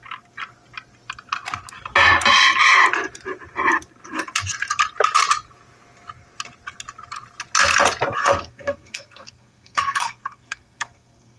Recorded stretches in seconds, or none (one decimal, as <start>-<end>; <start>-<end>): 0.0-8.2